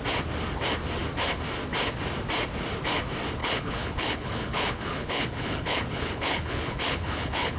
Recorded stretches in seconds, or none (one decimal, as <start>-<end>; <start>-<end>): 0.0-3.4